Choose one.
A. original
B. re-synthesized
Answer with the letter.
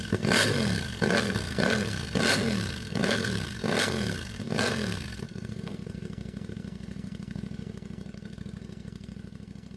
B